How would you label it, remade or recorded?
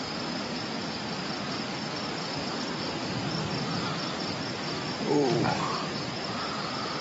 recorded